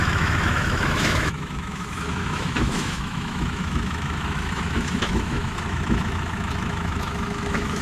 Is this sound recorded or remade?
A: remade